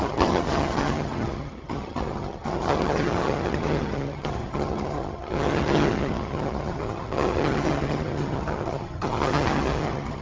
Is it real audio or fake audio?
fake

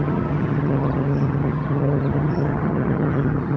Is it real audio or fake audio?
fake